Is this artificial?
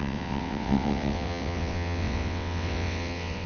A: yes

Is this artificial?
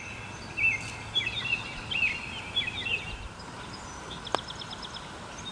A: no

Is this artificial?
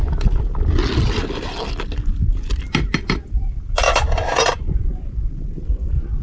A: no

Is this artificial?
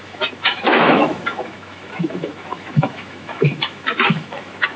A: yes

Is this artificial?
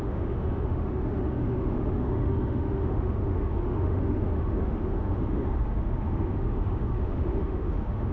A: yes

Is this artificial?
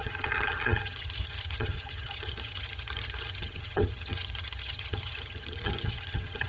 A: yes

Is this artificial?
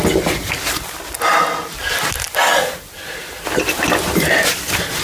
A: no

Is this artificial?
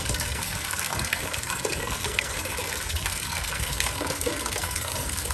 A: yes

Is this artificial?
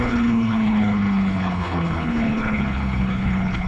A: yes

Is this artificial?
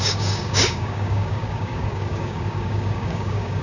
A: yes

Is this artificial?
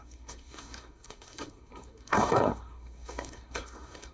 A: yes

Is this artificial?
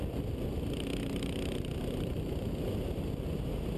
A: no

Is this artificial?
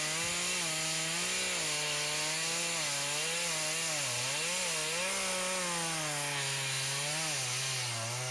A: no